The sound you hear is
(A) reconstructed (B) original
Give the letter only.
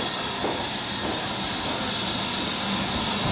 B